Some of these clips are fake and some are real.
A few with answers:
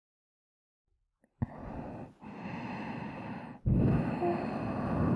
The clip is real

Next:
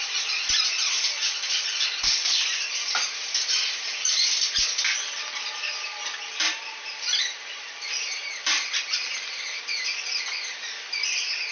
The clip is real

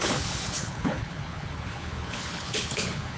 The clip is fake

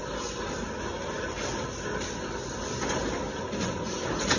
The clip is real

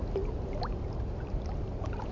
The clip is real